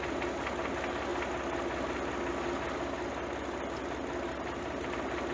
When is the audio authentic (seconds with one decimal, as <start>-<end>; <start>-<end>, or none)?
0.0-5.3